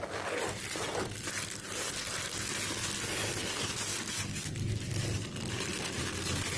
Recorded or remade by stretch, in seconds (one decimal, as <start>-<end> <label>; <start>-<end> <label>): 0.0-6.6 recorded